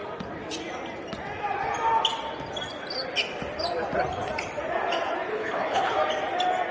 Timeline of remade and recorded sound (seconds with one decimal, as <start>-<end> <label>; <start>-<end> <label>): 0.0-5.3 recorded; 5.3-5.9 remade; 5.9-6.7 recorded